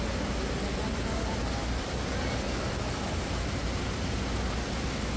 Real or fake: real